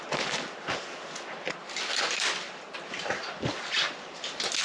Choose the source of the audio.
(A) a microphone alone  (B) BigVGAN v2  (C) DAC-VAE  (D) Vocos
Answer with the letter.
A